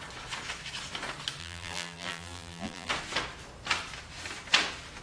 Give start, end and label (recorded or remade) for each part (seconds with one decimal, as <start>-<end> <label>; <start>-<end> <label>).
0.0-1.4 recorded; 1.4-2.9 remade; 2.9-5.0 recorded